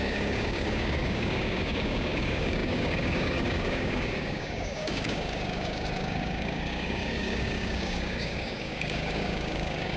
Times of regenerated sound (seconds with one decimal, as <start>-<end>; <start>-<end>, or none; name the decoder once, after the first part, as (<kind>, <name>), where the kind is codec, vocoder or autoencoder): 0.0-10.0 (codec, DAC)